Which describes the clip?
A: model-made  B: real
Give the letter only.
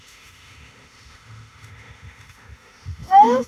A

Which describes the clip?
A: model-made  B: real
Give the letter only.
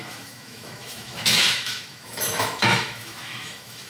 A